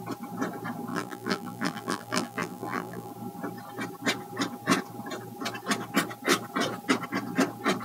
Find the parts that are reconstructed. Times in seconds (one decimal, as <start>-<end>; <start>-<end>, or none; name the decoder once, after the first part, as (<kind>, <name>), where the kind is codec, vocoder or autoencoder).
0.9-3.1 (vocoder, BigVGAN v2)